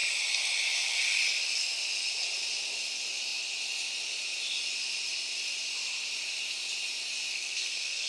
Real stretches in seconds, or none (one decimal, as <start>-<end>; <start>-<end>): 0.0-7.3